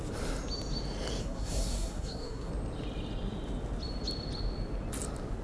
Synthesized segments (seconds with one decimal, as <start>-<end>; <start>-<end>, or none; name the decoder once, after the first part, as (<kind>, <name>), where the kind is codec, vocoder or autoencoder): 1.2-2.5 (codec, SNAC)